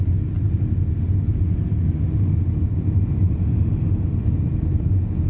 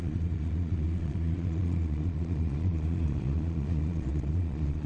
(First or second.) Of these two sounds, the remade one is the second